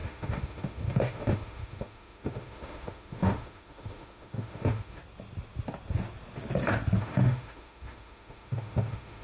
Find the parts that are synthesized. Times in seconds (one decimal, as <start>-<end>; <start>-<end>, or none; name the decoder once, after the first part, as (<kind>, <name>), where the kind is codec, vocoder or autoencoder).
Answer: 0.0-5.0 (autoencoder, DAC-VAE); 7.0-9.2

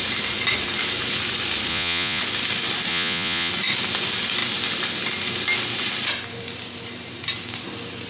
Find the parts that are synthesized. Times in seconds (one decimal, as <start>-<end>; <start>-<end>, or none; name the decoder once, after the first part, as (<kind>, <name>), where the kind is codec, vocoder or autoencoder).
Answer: 1.7-2.2 (vocoder, Vocos); 2.9-3.5